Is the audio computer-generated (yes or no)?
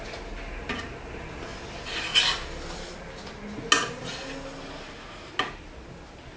no